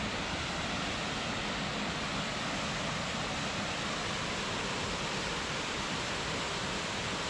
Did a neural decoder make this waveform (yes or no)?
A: no